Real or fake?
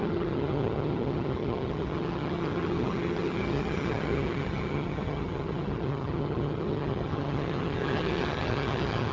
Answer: fake